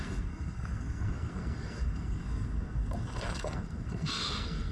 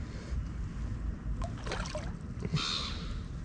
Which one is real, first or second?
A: second